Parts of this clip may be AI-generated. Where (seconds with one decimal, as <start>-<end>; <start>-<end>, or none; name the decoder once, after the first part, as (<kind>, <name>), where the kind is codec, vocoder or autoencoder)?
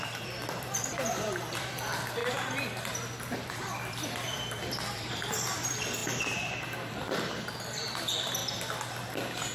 0.0-2.2 (vocoder, BigVGAN v2); 3.5-8.4